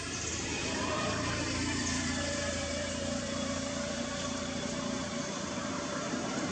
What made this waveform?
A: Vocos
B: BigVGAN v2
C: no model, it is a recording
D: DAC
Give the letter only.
B